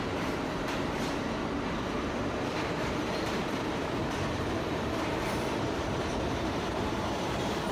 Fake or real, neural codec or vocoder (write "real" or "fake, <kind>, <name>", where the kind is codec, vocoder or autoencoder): fake, vocoder, BigVGAN v2